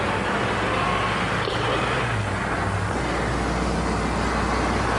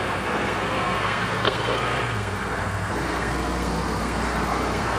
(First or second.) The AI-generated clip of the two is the second